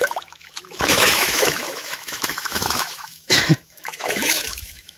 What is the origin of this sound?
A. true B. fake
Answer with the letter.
B